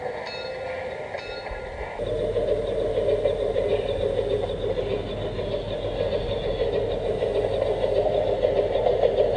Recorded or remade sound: recorded